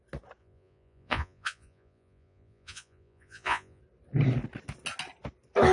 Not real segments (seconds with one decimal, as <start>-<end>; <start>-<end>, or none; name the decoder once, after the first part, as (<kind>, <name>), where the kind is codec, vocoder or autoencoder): 0.4-3.8 (vocoder, Vocos)